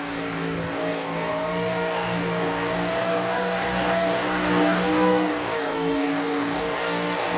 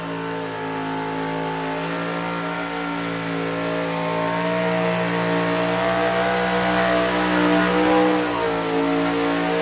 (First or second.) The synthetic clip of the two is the first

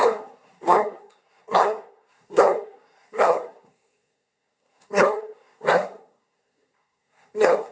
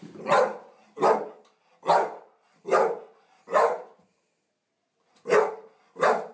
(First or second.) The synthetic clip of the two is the first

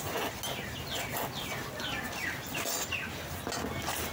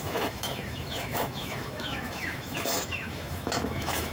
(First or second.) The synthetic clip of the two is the second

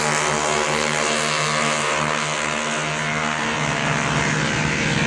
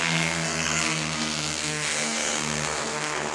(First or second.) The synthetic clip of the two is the second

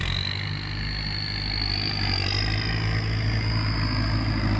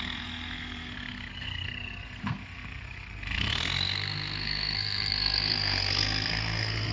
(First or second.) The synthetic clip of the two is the second